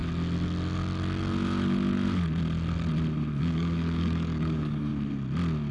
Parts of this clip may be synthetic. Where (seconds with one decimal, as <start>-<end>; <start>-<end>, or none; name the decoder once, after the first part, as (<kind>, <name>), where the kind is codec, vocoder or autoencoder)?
3.4-4.9 (codec, DAC)